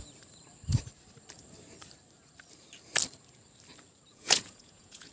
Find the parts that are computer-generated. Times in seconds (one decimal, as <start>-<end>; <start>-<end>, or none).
4.1-5.1